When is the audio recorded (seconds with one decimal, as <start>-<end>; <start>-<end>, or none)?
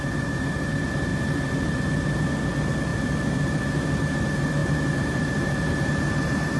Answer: none